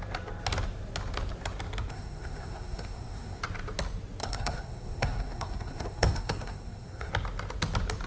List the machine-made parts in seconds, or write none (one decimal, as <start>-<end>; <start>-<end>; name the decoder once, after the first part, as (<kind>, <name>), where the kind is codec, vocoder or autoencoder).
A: 1.9-3.4 (codec, SNAC); 4.2-7.1